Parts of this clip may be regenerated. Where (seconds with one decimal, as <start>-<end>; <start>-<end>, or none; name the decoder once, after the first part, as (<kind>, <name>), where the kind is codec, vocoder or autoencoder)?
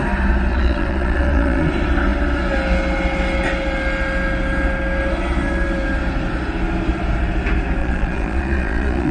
0.5-1.7 (vocoder, Vocos); 7.8-9.1